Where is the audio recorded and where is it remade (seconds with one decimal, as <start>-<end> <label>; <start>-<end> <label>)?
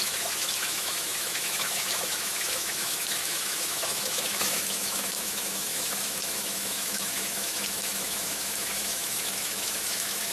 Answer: 0.0-10.3 remade